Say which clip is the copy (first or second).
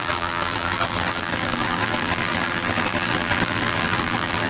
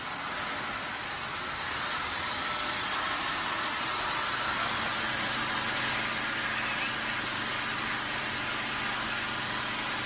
first